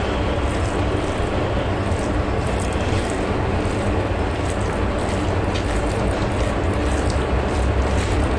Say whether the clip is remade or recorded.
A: recorded